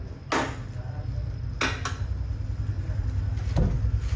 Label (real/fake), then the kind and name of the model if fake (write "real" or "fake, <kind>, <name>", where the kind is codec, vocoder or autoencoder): real